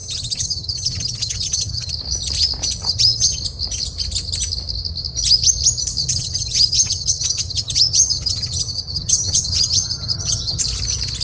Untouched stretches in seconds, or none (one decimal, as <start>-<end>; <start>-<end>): 1.9-2.8; 3.4-6.0; 10.6-11.2